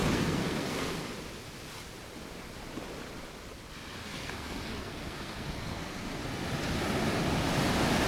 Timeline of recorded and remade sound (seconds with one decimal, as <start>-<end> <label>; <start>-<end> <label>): 0.0-1.1 remade; 1.1-4.0 recorded; 4.0-6.2 remade; 6.2-8.1 recorded